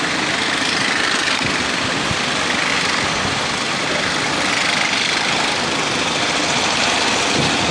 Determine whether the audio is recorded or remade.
recorded